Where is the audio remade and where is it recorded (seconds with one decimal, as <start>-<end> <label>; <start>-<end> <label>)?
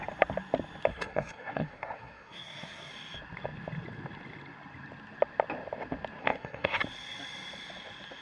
0.0-0.9 recorded; 0.9-2.9 remade; 2.9-6.2 recorded; 6.2-6.8 remade; 6.8-8.2 recorded